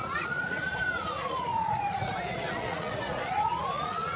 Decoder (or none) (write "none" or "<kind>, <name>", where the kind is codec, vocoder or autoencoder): vocoder, Vocos